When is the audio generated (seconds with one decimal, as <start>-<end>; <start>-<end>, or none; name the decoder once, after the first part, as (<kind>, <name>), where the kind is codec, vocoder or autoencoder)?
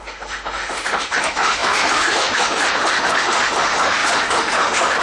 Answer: 0.0-5.0 (autoencoder, DAC-VAE)